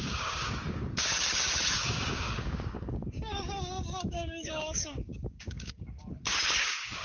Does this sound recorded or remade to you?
remade